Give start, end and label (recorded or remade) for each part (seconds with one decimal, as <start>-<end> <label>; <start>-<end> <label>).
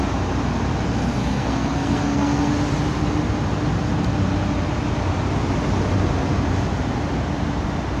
0.0-1.2 recorded; 1.2-2.5 remade; 2.5-8.0 recorded